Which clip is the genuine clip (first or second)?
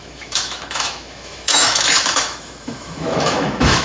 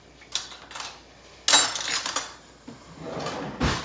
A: second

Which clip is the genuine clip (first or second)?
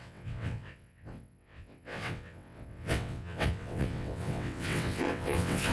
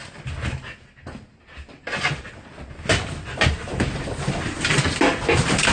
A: second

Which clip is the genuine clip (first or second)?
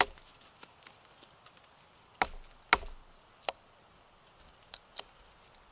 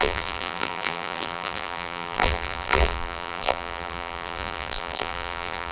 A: first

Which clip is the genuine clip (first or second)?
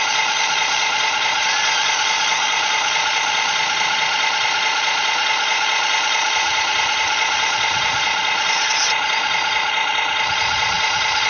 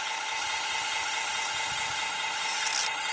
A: second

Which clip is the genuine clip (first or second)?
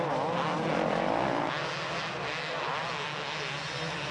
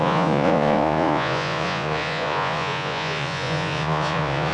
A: first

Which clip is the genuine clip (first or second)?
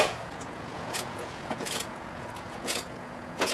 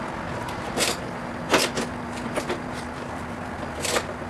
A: second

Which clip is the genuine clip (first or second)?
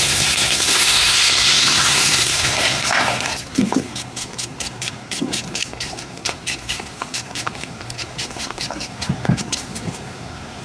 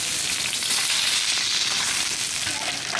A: second